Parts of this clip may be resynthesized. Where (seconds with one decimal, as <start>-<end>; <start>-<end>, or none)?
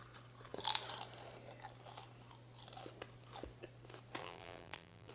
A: 4.2-5.1